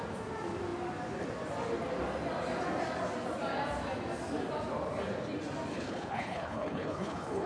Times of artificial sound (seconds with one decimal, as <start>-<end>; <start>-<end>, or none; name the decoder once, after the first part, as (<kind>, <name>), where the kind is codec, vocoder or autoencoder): 5.7-7.5 (codec, HILCodec)